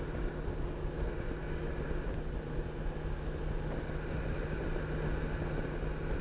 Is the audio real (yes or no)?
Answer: yes